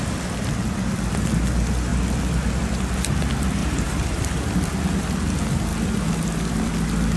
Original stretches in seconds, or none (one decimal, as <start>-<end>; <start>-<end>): 0.0-3.6; 4.4-7.2